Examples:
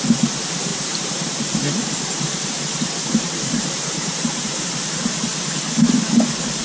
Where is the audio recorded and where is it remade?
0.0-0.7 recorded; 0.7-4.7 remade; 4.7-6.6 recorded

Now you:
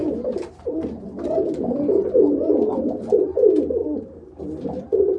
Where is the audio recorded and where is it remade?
0.0-2.8 remade; 2.8-3.8 recorded; 3.8-4.4 remade; 4.4-5.2 recorded

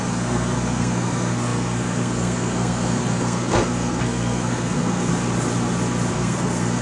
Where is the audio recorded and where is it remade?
0.0-5.1 remade; 5.1-6.1 recorded; 6.1-6.8 remade